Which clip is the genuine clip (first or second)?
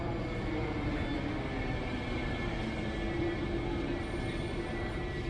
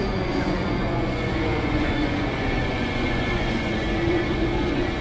first